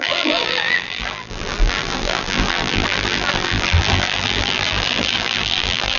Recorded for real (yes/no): no